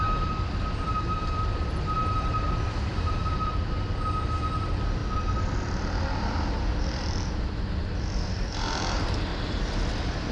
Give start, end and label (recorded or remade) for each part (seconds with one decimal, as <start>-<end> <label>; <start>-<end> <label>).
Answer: 0.0-5.0 remade; 5.0-6.6 recorded; 6.6-9.3 remade; 9.3-9.9 recorded; 9.9-10.3 remade